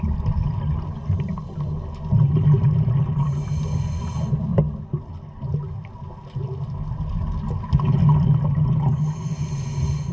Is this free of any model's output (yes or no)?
yes